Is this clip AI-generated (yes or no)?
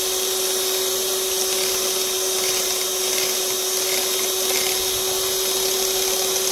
no